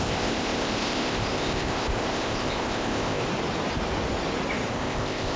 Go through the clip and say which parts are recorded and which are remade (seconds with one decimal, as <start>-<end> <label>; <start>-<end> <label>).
0.0-3.2 remade; 3.2-4.7 recorded; 4.7-5.4 remade

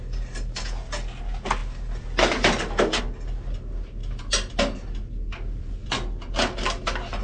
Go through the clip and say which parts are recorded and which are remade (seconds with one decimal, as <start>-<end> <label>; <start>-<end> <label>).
0.0-7.2 recorded

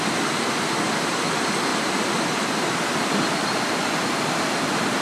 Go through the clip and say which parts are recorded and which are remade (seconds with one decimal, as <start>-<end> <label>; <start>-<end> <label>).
0.0-1.7 recorded; 1.7-5.0 remade

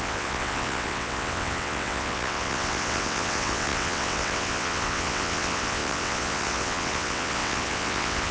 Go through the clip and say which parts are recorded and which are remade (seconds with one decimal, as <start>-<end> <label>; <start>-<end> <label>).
0.0-8.3 remade

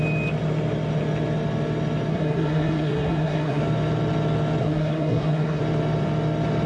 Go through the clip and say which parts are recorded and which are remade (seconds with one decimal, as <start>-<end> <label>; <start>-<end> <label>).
0.0-2.1 recorded; 2.1-3.6 remade; 3.6-4.6 recorded; 4.6-5.6 remade; 5.6-6.7 recorded

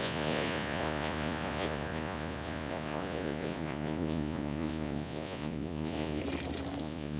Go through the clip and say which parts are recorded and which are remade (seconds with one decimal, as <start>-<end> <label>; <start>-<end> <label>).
0.0-6.2 remade; 6.2-6.8 recorded; 6.8-7.2 remade